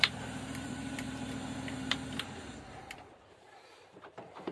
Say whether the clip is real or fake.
fake